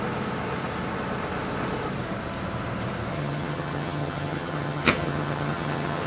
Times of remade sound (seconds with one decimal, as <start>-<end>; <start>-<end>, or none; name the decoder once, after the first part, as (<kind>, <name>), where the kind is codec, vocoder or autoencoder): 3.1-6.1 (vocoder, HiFi-GAN)